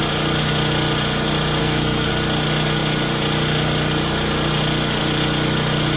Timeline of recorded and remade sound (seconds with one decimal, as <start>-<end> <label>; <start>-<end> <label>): 0.0-1.6 recorded; 1.6-2.1 remade; 2.1-6.0 recorded